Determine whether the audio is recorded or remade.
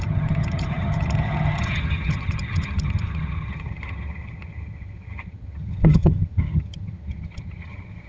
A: remade